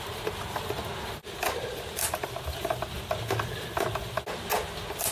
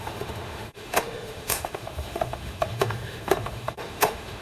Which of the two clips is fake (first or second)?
second